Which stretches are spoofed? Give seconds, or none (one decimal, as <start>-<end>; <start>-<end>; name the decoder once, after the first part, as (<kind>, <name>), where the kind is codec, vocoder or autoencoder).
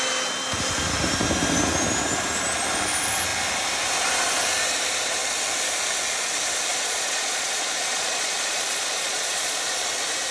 6.7-9.8 (vocoder, Vocos)